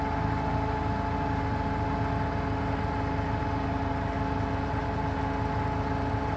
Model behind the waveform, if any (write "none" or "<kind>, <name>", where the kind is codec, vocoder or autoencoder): none